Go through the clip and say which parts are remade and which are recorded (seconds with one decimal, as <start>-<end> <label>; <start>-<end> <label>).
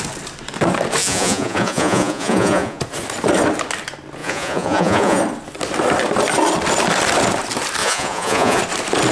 0.0-1.0 recorded; 1.0-2.8 remade; 2.8-4.2 recorded; 4.2-5.2 remade; 5.2-7.8 recorded; 7.8-8.6 remade; 8.6-9.1 recorded